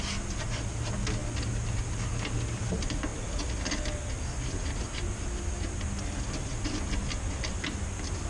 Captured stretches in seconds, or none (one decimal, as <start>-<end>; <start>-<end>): 0.0-8.3